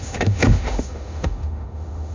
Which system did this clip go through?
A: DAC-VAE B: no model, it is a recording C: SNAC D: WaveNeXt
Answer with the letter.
A